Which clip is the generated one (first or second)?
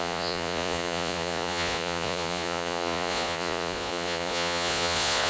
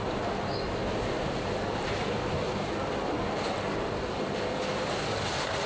first